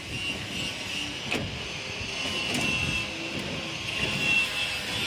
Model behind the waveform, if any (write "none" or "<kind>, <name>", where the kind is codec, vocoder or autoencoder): none